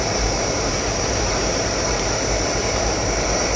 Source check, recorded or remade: remade